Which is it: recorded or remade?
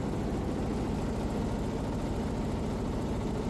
recorded